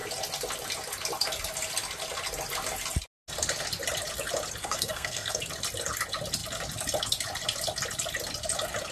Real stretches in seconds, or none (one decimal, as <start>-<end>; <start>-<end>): 0.0-4.6; 5.4-8.9